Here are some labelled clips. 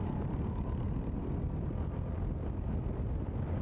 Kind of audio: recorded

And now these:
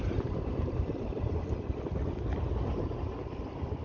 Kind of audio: recorded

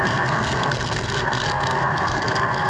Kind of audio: remade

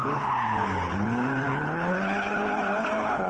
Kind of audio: remade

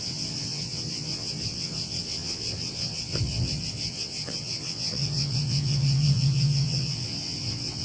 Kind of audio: remade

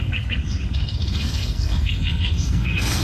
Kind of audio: remade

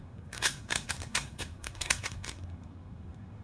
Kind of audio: remade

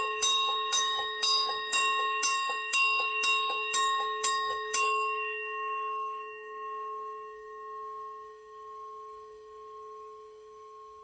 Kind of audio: remade